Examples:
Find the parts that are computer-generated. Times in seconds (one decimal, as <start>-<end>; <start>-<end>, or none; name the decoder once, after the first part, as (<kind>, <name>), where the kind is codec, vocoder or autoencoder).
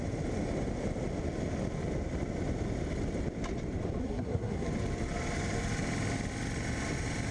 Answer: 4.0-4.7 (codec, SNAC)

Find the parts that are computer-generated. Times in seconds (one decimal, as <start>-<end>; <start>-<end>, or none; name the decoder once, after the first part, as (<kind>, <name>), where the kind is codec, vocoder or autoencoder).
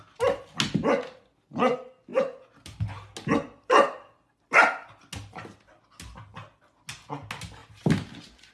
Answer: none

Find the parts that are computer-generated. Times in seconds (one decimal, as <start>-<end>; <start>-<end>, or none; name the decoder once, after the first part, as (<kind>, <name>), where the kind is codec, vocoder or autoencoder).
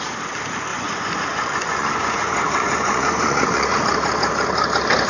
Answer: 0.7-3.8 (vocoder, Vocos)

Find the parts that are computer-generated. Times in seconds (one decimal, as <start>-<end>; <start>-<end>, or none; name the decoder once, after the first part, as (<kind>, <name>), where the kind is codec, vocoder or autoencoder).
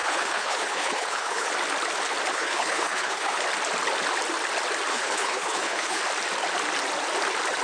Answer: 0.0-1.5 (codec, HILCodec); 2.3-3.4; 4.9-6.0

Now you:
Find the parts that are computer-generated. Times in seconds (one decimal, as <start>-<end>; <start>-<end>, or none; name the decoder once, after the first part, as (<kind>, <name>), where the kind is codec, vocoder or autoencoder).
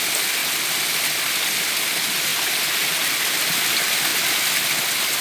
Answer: 0.4-1.3 (vocoder, BigVGAN v2)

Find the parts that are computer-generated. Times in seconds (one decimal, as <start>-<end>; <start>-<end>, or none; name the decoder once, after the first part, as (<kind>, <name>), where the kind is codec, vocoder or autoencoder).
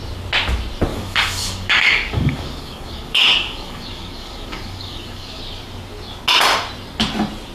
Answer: 0.9-5.4 (codec, DAC)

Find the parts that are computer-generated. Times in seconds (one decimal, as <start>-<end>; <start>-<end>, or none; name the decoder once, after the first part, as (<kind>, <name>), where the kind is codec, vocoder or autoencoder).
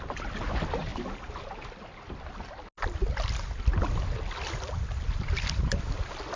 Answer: none